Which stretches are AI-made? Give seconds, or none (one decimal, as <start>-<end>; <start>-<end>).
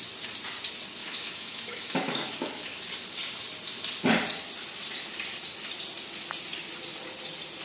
1.0-2.9